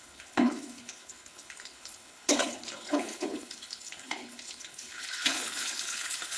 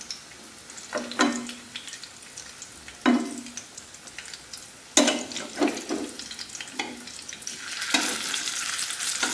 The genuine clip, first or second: second